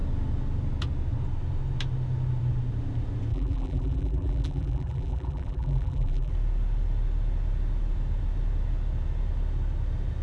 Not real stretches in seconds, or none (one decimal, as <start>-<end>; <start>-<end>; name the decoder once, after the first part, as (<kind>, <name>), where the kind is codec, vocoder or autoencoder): 3.3-6.3 (vocoder, BigVGAN v2)